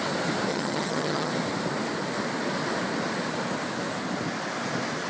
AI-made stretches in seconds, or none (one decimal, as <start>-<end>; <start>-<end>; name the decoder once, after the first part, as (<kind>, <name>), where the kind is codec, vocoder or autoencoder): 0.5-1.3 (vocoder, HiFi-GAN)